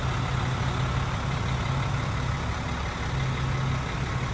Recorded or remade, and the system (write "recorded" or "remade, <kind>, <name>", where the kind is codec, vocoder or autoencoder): recorded